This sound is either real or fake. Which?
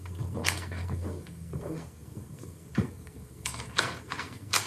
fake